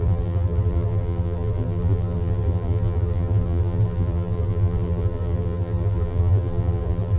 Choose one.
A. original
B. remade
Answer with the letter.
B